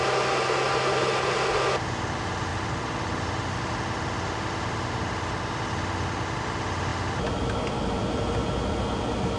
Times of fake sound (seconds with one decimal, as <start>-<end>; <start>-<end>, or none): none